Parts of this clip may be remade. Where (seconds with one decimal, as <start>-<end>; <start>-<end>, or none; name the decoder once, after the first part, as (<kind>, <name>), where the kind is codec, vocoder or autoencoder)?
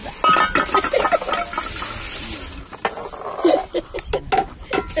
none